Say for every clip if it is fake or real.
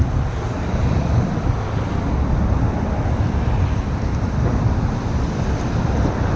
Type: real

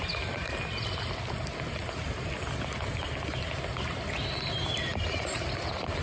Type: real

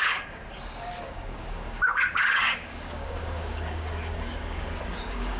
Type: fake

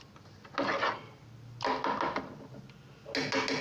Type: real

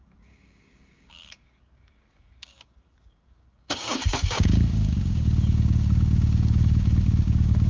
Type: fake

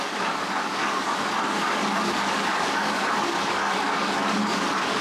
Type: fake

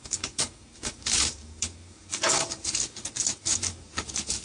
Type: fake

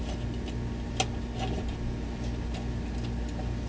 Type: real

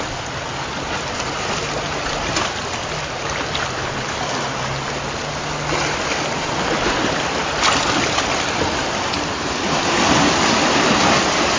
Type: real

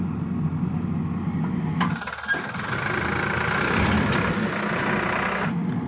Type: real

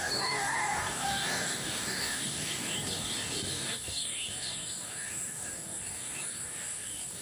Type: fake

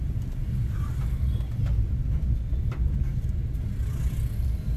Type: real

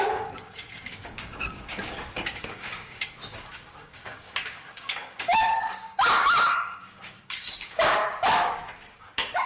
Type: fake